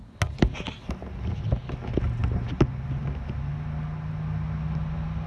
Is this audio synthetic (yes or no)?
no